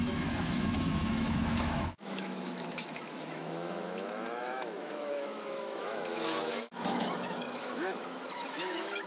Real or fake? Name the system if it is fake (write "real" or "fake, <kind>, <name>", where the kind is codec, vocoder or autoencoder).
fake, autoencoder, DAC-VAE